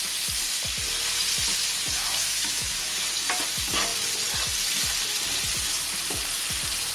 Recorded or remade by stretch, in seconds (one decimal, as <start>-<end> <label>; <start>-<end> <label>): 0.0-2.2 recorded; 2.2-3.0 remade; 3.0-6.9 recorded